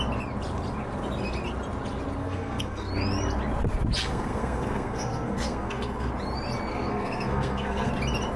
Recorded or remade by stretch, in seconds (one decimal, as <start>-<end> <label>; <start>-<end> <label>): 0.0-2.2 recorded; 2.2-2.9 remade; 2.9-4.0 recorded; 4.0-6.1 remade; 6.1-6.7 recorded; 6.7-7.9 remade; 7.9-8.4 recorded